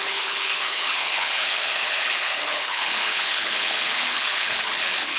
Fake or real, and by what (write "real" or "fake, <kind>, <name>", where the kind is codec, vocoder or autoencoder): fake, codec, HILCodec